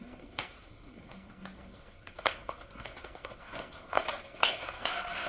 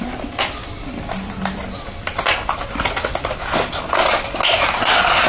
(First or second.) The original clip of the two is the second